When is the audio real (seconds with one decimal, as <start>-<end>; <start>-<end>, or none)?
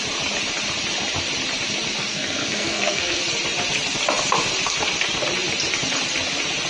0.0-2.1; 3.2-6.7